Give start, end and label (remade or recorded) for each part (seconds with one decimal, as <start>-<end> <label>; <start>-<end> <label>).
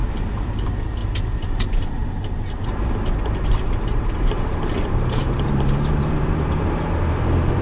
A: 0.0-0.6 remade; 0.6-1.0 recorded; 1.0-5.5 remade; 5.5-5.9 recorded; 5.9-7.6 remade